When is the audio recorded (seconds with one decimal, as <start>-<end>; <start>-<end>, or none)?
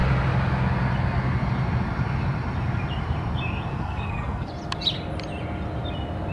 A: 0.0-3.7; 4.5-6.3